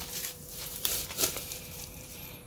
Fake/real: fake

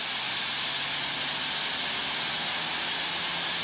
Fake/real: real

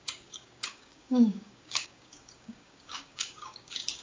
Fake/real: fake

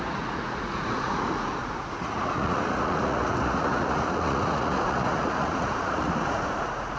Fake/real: fake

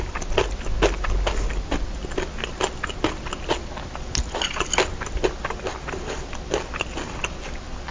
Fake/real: real